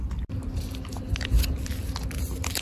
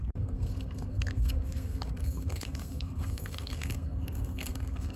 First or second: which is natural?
first